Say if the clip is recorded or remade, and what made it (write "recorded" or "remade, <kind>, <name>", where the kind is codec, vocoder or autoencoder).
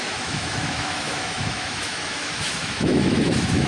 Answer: remade, autoencoder, DAC-VAE